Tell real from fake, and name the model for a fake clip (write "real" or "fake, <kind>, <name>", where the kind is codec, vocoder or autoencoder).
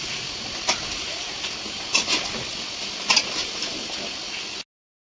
real